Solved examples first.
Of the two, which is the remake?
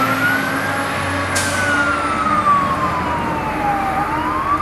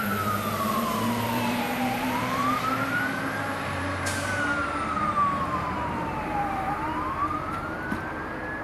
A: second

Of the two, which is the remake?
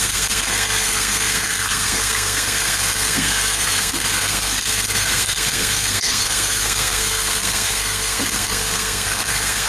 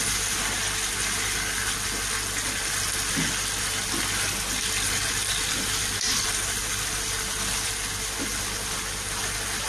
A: first